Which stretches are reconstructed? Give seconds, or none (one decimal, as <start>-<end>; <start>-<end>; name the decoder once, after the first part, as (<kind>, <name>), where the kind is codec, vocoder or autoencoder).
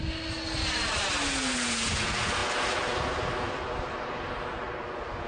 none